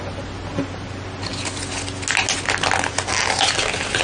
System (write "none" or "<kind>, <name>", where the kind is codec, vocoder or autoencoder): none